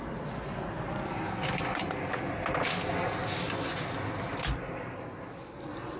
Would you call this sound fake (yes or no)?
no